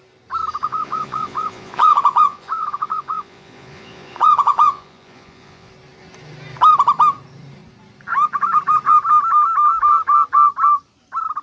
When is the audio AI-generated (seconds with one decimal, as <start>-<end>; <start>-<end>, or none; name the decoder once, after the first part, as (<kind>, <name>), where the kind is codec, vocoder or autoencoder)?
0.6-5.7 (vocoder, Vocos)